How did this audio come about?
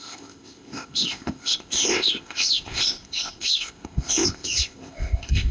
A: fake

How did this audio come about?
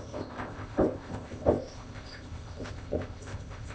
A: fake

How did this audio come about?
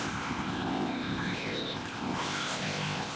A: fake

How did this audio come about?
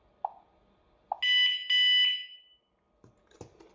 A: real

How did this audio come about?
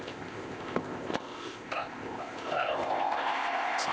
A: fake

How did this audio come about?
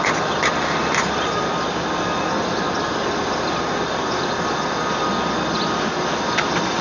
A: real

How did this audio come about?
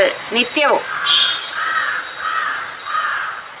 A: real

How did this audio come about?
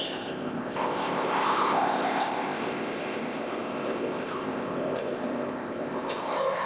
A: fake